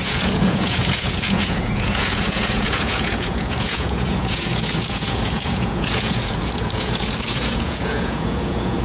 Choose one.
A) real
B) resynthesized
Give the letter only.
B